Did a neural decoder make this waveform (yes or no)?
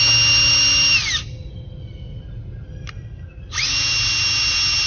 no